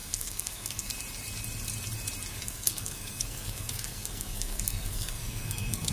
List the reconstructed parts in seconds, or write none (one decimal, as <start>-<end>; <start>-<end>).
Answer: 0.0-0.9; 2.3-5.9